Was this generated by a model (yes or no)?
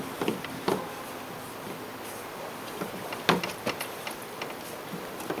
no